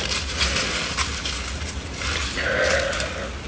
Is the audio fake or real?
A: real